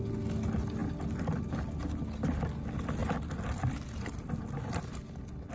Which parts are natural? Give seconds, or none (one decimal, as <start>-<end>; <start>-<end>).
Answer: 0.0-3.0; 4.3-5.5